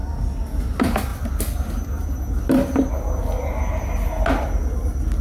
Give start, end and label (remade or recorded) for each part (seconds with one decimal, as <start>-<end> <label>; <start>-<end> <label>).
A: 0.0-5.2 recorded